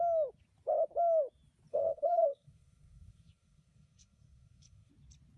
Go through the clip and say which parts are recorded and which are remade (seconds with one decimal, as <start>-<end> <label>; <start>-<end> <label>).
0.0-1.7 recorded; 1.7-4.9 remade; 4.9-5.4 recorded